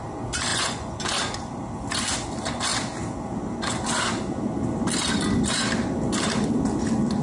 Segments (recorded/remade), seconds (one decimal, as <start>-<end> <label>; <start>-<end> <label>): 0.0-0.5 recorded; 0.5-1.0 remade; 1.0-7.2 recorded